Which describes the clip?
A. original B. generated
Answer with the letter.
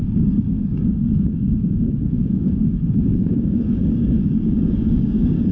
B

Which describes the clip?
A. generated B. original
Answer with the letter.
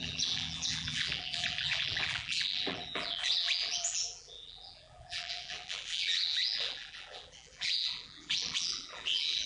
A